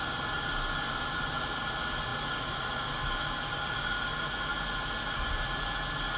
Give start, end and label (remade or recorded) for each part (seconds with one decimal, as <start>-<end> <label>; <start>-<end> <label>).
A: 0.0-6.2 recorded